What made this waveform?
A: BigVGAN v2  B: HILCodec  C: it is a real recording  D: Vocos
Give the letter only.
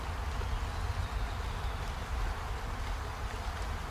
C